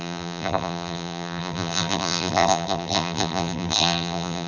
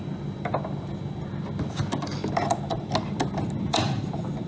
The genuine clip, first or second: second